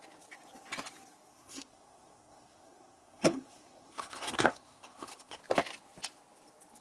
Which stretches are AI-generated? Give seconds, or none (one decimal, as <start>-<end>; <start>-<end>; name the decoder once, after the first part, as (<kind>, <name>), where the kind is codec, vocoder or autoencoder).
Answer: 1.3-5.4 (codec, SNAC)